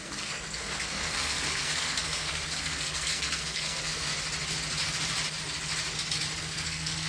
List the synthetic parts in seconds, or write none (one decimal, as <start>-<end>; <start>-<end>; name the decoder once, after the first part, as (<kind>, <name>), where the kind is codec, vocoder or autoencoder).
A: 0.0-4.1 (codec, SNAC); 6.4-7.1